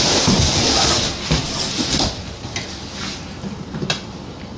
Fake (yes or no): no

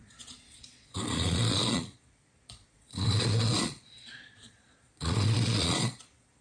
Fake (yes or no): yes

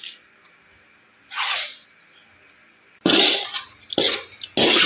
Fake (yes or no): no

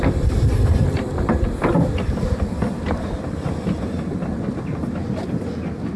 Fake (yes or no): no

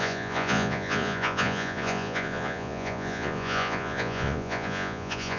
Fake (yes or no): yes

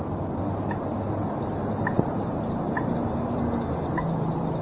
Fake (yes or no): no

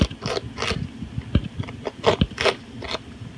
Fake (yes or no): no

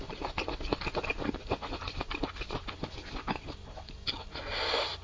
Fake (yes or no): no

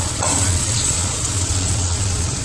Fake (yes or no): yes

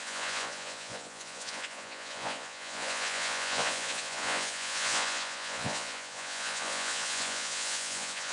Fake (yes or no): yes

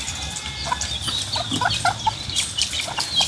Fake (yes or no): no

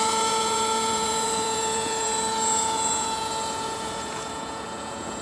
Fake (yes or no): yes